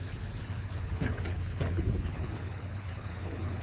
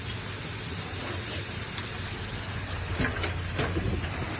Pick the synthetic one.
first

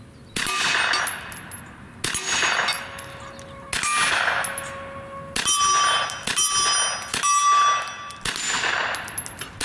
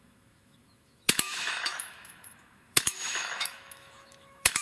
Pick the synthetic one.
second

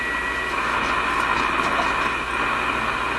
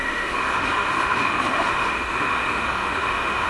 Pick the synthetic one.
second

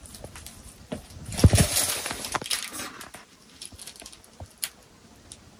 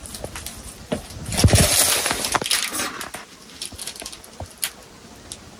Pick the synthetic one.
first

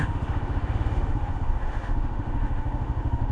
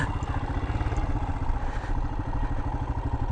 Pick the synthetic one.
first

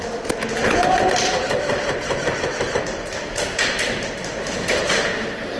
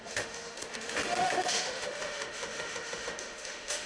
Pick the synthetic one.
second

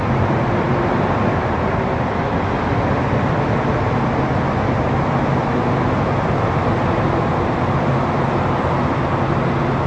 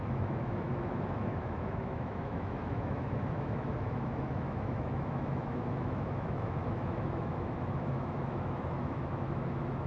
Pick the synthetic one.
second